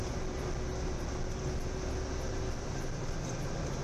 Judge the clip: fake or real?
real